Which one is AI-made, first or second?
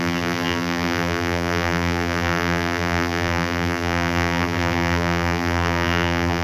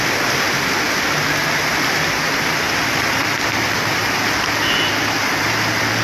first